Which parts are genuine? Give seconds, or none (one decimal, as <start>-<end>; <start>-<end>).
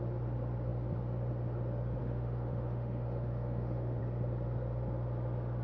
0.0-2.0; 4.0-5.6